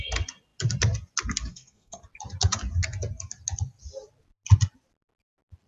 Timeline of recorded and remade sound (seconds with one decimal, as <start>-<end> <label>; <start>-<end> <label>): 0.0-1.5 recorded; 1.5-2.0 remade; 2.0-5.7 recorded